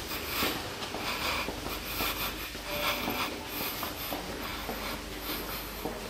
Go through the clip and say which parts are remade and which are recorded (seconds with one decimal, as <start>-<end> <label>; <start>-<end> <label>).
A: 0.0-2.7 remade; 2.7-3.2 recorded; 3.2-4.5 remade; 4.5-5.3 recorded; 5.3-6.1 remade